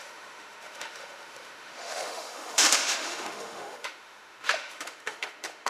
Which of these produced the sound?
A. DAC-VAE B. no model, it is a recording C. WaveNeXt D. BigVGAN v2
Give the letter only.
A